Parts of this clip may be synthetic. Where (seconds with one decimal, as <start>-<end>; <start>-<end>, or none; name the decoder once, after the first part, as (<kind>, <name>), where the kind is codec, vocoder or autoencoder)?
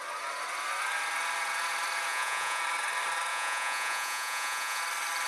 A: 2.1-2.6 (vocoder, Vocos); 3.3-4.8